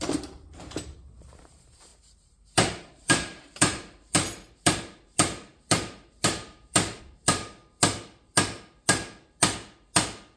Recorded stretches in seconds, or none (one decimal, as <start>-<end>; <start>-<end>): 7.6-10.4